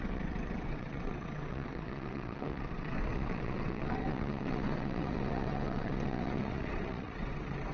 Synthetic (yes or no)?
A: yes